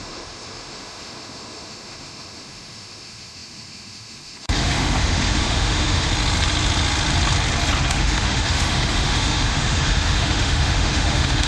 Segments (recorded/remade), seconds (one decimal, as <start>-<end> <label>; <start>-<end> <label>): 0.0-6.1 remade; 6.1-7.9 recorded; 7.9-11.5 remade